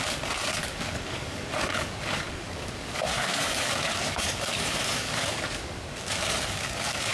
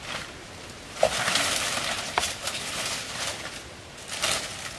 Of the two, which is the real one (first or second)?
second